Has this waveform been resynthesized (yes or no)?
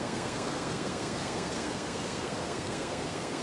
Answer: yes